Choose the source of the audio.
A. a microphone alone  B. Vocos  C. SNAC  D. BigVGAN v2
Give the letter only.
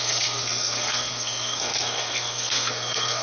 C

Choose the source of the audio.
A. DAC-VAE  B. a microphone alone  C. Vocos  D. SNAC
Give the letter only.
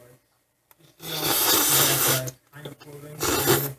B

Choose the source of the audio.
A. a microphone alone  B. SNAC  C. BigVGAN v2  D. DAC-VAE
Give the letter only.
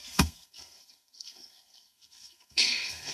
B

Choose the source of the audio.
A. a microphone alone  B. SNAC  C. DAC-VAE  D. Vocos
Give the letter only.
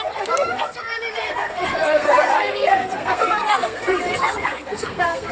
B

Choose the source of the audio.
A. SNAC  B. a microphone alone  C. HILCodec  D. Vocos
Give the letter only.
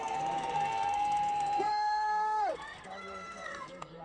A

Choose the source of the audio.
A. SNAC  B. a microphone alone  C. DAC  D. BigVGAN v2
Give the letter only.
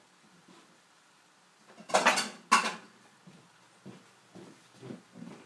B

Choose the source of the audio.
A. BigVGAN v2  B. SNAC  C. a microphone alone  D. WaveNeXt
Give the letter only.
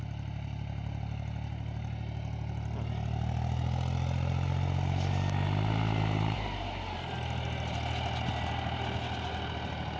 C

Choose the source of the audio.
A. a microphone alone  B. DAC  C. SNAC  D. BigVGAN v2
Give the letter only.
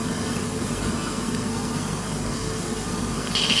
C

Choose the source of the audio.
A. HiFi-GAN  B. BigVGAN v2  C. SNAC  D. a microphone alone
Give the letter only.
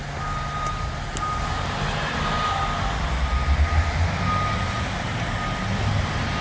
D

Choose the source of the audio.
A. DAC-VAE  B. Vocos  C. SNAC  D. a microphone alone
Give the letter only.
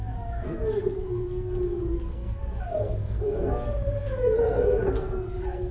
C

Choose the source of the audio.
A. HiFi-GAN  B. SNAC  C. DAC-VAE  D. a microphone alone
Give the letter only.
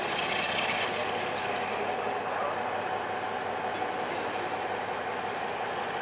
D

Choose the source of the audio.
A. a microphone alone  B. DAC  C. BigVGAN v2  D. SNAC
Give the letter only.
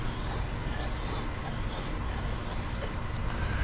A